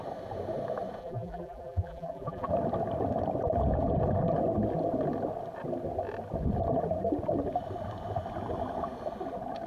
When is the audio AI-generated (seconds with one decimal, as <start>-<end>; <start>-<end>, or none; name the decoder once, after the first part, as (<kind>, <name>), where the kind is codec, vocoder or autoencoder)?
1.0-2.5 (vocoder, BigVGAN v2)